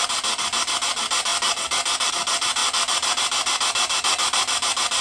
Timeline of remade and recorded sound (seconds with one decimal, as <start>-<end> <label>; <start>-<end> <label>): 0.0-5.0 recorded